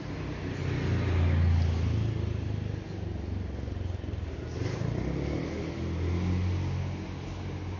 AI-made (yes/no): no